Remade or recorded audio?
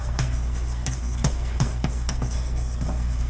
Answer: remade